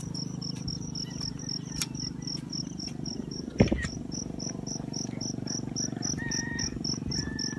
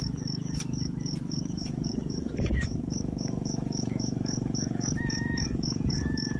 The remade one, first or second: second